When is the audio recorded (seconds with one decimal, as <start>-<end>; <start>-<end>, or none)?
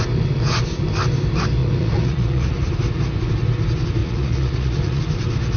0.0-1.6; 2.7-4.0; 5.0-5.6